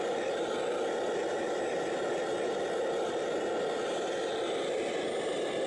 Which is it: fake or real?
real